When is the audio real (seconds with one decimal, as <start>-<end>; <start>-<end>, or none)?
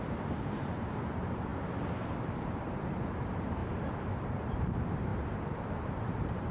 3.6-4.1